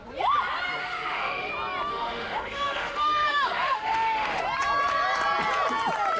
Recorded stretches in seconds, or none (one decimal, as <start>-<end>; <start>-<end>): 0.0-0.8; 1.5-1.9; 4.4-6.2